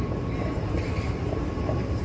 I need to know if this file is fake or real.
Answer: fake